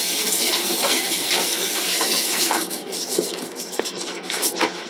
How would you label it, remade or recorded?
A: remade